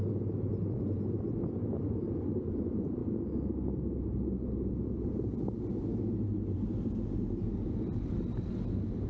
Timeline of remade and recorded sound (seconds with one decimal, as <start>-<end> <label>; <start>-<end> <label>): 0.0-9.1 recorded